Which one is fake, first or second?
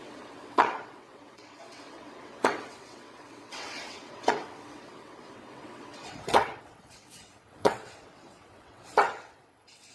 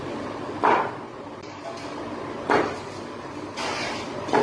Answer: first